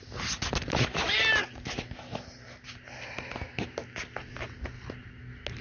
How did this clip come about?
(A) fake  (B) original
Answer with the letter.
B